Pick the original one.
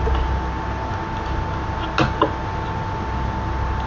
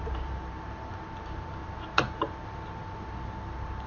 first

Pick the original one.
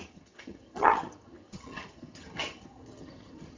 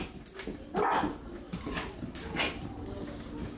second